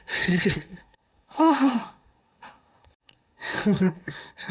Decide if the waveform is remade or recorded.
remade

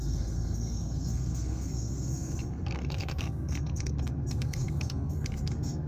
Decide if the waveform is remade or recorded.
remade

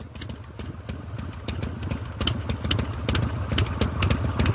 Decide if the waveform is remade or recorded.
recorded